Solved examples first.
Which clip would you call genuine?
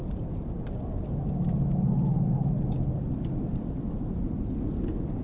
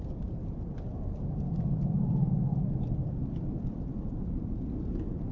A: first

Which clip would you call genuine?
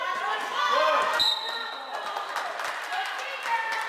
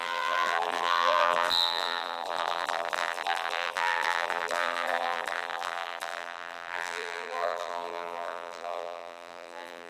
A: first